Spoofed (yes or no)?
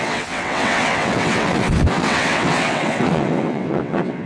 yes